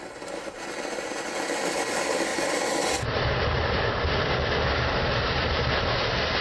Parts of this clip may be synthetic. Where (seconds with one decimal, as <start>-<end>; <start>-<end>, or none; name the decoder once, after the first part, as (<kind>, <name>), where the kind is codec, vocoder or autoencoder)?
none